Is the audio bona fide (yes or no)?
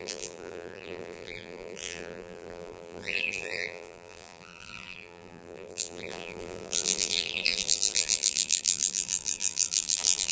no